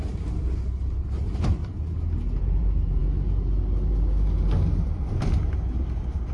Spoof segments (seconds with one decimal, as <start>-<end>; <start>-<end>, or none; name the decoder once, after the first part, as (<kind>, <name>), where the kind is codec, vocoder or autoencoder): 0.0-1.6 (vocoder, BigVGAN v2); 2.4-3.0